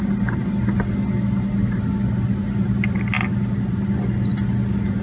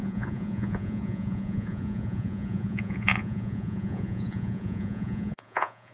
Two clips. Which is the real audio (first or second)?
first